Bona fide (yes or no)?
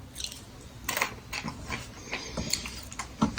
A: yes